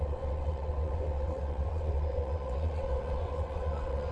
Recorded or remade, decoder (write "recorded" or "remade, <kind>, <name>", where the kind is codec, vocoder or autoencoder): remade, vocoder, WaveNeXt